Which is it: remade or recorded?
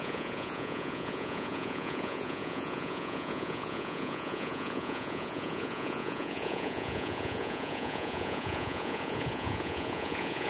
remade